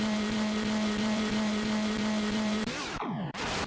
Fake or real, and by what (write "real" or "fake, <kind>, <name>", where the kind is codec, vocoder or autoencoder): fake, vocoder, BigVGAN v2